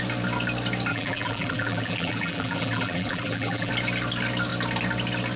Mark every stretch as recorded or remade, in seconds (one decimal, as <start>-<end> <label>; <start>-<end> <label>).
0.0-0.9 recorded; 0.9-3.7 remade; 3.7-5.4 recorded